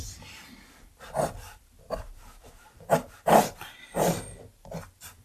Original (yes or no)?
no